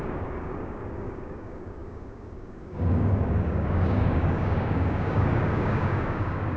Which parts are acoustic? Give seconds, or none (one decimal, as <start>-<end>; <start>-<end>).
none